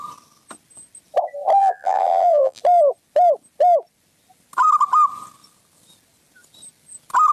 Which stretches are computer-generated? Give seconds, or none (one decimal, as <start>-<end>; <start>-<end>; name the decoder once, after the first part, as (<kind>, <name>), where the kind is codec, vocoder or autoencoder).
1.6-2.6 (vocoder, BigVGAN v2)